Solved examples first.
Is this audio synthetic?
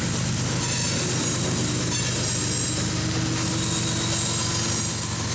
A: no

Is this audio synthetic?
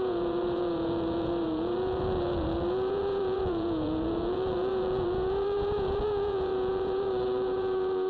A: yes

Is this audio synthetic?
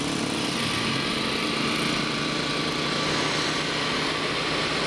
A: no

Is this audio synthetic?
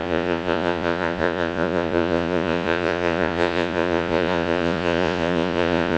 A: yes